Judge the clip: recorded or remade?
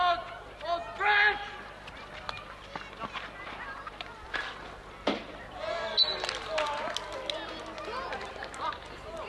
recorded